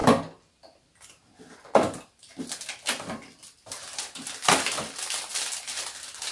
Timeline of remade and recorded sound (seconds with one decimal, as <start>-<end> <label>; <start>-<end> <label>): 0.0-6.3 recorded